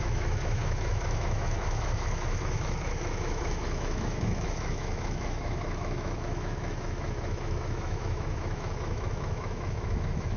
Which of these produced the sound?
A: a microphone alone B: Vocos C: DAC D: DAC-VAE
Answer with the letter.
D